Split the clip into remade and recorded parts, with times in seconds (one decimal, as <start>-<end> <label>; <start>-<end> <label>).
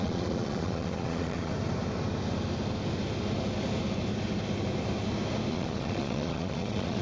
0.0-1.5 remade; 1.5-5.5 recorded; 5.5-7.0 remade